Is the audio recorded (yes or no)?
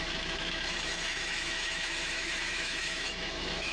no